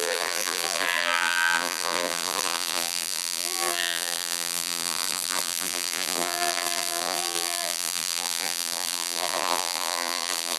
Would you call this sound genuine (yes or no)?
no